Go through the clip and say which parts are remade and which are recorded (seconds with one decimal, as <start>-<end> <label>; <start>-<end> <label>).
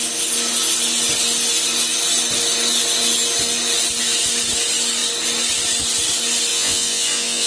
0.0-6.5 recorded; 6.5-7.5 remade